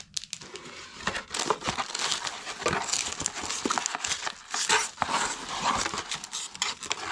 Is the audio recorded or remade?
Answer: recorded